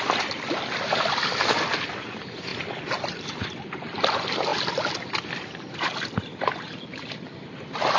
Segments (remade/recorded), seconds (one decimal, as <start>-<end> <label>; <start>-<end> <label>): 0.0-8.0 recorded